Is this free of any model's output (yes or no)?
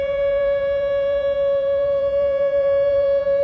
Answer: no